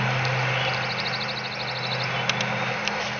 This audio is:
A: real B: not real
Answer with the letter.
A